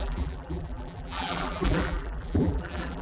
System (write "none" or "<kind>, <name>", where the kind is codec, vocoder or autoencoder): vocoder, BigVGAN v2